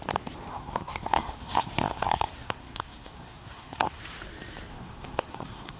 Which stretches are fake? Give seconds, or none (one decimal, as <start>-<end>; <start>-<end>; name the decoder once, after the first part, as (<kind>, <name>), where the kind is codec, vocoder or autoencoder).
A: 0.5-4.0 (codec, SNAC); 4.7-5.8